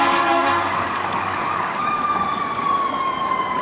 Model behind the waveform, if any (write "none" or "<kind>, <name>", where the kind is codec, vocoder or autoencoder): codec, DAC